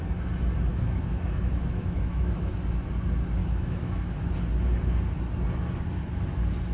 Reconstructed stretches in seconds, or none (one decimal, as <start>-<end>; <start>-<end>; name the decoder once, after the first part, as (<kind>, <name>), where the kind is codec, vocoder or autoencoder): 0.7-2.5 (autoencoder, DAC-VAE); 3.4-4.3